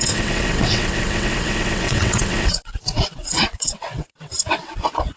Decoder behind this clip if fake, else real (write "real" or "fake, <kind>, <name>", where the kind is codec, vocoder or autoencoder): fake, vocoder, WaveNeXt